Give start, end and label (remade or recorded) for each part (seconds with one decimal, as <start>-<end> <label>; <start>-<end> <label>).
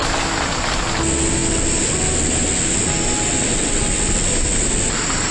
0.0-5.3 recorded